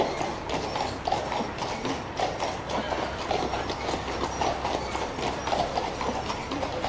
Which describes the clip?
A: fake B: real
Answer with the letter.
B